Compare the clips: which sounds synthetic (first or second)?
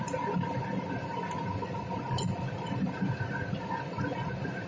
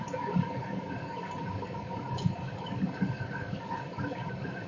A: second